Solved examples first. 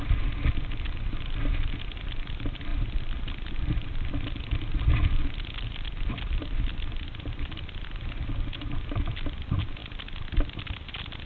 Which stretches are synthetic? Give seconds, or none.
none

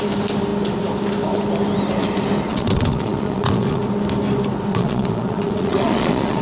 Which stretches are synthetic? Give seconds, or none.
2.5-3.8 (vocoder, Vocos); 4.7-6.4

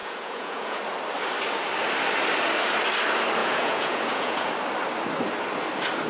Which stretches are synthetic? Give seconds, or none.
0.0-0.8 (vocoder, Vocos); 3.4-4.5